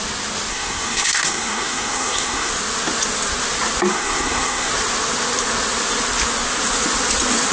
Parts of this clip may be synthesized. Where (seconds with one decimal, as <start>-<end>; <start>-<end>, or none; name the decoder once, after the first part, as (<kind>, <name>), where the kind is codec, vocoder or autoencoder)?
0.5-2.5 (codec, SNAC); 3.9-4.7

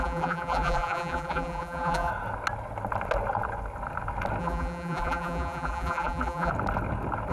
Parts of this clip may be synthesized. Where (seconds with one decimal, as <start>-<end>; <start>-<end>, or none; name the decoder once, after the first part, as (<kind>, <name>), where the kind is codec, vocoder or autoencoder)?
0.0-2.1 (vocoder, BigVGAN v2); 4.4-6.5

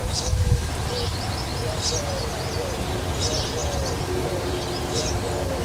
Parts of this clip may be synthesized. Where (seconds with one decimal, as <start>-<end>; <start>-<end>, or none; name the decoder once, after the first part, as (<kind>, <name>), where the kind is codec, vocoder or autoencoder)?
0.0-0.7 (autoencoder, DAC-VAE)

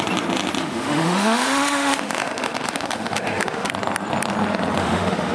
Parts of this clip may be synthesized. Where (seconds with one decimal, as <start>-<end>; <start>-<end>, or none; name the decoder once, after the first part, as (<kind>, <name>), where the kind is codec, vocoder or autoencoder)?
0.6-3.7 (autoencoder, DAC-VAE); 4.8-5.3

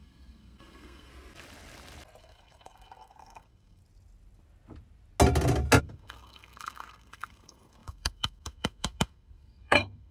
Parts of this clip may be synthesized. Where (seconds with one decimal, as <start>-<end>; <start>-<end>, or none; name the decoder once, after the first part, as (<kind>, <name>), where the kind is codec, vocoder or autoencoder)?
0.0-1.1 (codec, SNAC); 2.2-3.8; 5.8-10.1

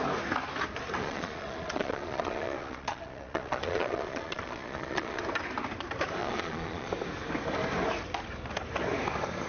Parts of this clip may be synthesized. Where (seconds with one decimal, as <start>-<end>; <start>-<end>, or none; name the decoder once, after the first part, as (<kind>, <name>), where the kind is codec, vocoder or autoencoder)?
1.0-5.2 (vocoder, Vocos); 6.2-6.9

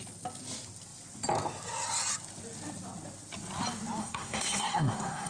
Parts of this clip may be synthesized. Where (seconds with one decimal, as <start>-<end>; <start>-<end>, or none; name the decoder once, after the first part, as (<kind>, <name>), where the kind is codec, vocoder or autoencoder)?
4.0-5.3 (codec, SNAC)

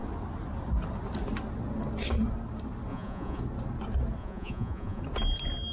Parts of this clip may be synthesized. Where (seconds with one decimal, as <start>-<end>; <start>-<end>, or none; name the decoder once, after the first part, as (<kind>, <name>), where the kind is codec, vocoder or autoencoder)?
2.9-3.4 (vocoder, Vocos); 4.2-5.0